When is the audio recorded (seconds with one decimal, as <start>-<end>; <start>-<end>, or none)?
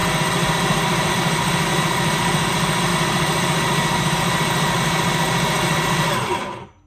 0.0-6.9